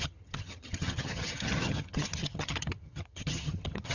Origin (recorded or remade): remade